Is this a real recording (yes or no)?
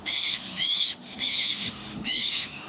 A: no